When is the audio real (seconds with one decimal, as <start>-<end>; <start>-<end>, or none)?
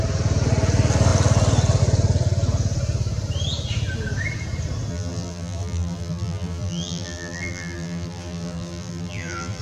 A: 0.0-4.9